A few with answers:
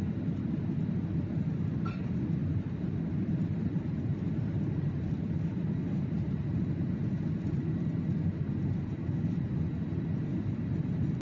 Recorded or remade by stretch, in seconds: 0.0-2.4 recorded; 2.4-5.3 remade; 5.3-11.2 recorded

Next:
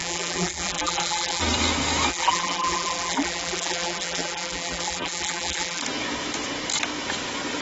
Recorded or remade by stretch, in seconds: 0.0-1.4 remade; 1.4-2.1 recorded; 2.1-5.8 remade; 5.8-7.6 recorded

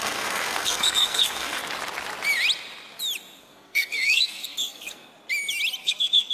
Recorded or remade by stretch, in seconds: 0.0-1.6 remade; 1.6-3.4 recorded; 3.4-5.1 remade; 5.1-5.8 recorded; 5.8-6.3 remade

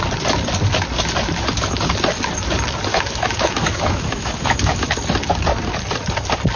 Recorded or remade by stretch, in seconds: 0.0-2.9 recorded; 2.9-4.9 remade; 4.9-6.6 recorded

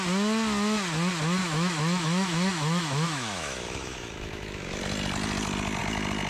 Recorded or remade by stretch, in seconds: 0.0-1.4 recorded; 1.4-4.8 remade; 4.8-6.3 recorded